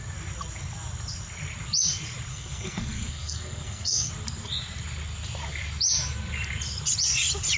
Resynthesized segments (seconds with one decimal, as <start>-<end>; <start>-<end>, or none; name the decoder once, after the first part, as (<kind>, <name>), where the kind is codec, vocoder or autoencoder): 2.3-4.1 (codec, SNAC)